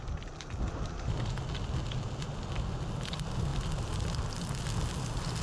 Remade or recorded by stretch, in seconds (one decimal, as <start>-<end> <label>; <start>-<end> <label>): 0.0-5.4 recorded